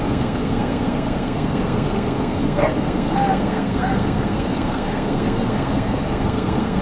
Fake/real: fake